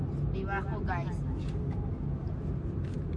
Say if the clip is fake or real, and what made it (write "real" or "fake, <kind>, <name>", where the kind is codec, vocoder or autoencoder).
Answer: real